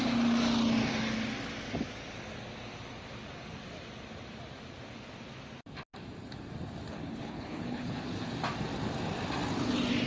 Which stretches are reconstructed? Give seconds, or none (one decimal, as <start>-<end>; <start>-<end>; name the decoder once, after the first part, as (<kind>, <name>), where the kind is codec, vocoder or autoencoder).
6.9-8.0 (codec, HILCodec)